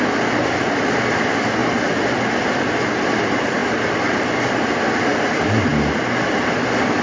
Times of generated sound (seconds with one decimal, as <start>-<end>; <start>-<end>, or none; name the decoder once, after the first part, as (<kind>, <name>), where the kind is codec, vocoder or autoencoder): 0.0-1.6 (vocoder, BigVGAN v2); 3.0-5.7; 6.5-7.0